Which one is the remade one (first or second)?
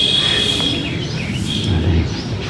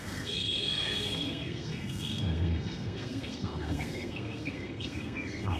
second